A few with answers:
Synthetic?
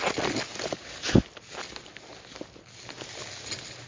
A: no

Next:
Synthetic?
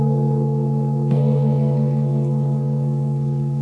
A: yes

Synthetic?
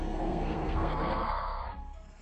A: yes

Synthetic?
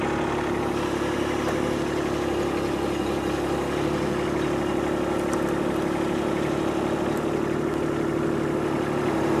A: no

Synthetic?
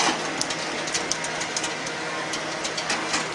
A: no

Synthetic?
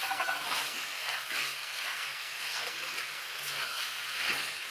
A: yes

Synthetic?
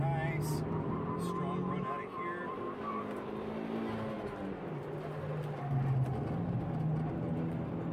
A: no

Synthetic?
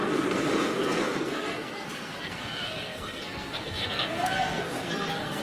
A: yes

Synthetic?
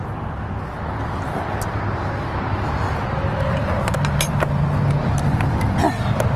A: no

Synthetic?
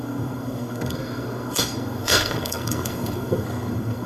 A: yes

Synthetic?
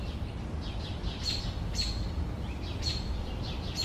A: no